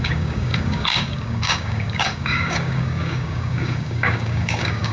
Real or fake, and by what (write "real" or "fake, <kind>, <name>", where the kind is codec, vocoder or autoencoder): fake, codec, DAC